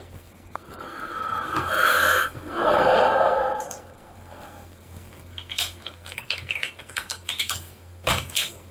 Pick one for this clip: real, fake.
fake